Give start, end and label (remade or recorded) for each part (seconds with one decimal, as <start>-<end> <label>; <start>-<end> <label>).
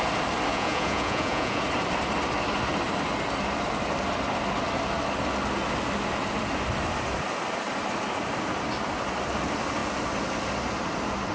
0.0-0.5 recorded; 0.5-1.6 remade; 1.6-11.3 recorded